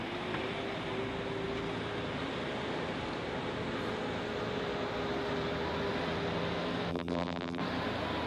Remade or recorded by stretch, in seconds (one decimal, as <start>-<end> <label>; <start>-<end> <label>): 0.0-6.9 recorded; 6.9-7.6 remade; 7.6-8.3 recorded